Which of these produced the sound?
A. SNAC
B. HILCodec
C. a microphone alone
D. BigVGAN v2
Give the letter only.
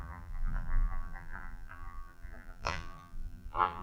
D